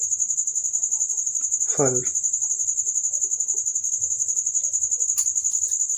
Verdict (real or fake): real